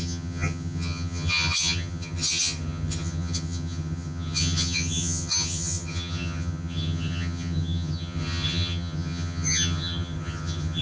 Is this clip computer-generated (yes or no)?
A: yes